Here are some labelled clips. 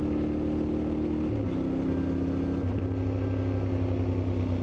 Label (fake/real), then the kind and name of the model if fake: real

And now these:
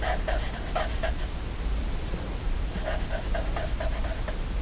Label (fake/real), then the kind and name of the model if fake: real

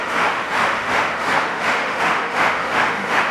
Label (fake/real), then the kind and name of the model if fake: fake, autoencoder, DAC-VAE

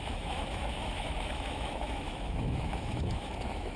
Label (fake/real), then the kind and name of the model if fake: fake, autoencoder, DAC-VAE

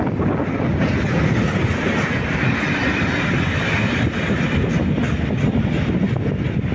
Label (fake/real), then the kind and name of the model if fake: real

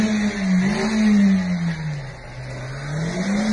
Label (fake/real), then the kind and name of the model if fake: real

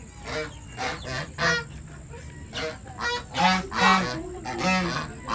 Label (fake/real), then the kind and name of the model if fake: real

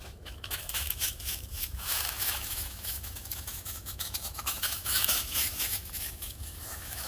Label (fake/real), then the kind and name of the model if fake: fake, autoencoder, DAC-VAE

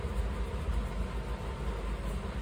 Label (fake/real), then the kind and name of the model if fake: real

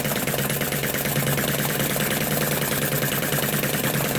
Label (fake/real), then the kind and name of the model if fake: real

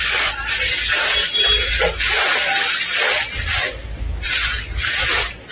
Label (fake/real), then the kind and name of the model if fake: real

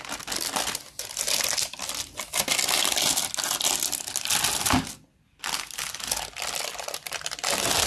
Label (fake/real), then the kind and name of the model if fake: real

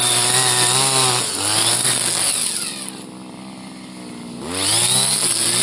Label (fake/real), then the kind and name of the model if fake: real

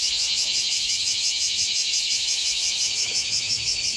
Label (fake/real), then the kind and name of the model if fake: fake, autoencoder, DAC-VAE